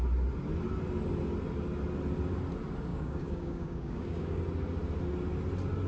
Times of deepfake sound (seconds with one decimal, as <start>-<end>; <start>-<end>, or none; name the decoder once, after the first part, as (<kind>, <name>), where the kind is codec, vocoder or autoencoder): 2.9-4.4 (codec, DAC)